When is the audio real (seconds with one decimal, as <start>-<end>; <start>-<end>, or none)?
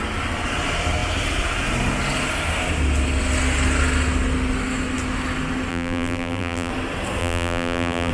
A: 0.0-5.7; 6.7-7.2